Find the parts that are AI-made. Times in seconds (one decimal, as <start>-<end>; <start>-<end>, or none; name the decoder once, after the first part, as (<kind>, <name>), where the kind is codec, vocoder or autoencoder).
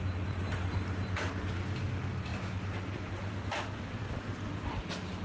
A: none